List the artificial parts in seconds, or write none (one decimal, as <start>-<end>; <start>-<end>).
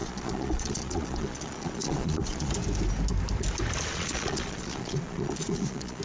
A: 0.0-2.5; 3.9-6.0